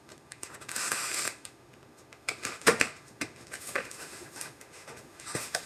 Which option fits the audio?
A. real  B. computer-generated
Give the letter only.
B